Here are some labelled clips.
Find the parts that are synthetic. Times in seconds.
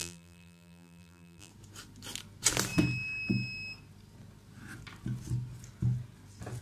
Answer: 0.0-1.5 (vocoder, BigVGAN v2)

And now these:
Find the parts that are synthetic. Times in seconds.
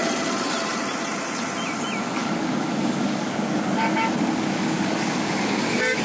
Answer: 2.2-6.0 (codec, DAC)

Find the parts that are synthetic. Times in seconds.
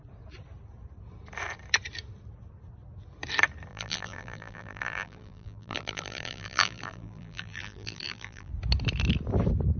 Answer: 3.7-8.5 (vocoder, BigVGAN v2)